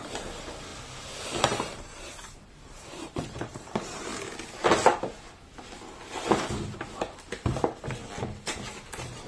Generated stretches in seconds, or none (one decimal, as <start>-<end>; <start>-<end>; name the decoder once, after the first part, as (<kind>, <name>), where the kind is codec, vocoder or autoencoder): 0.0-0.7 (vocoder, BigVGAN v2); 1.4-4.1; 7.3-8.0; 8.9-9.3